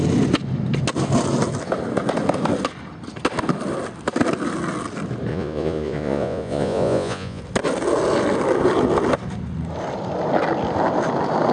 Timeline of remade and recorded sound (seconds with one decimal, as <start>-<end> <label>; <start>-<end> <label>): 0.0-5.3 recorded; 5.3-7.4 remade; 7.4-11.5 recorded